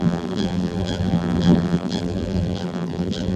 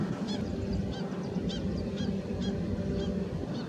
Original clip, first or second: second